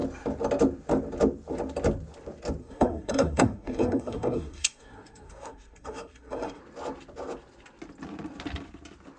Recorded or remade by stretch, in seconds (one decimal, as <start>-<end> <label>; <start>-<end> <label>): 0.0-2.6 recorded; 2.6-6.6 remade; 6.6-9.2 recorded